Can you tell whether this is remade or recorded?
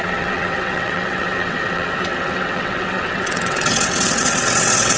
remade